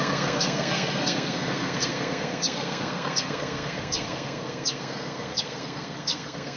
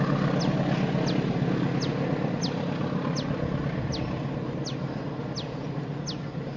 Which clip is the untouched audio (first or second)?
second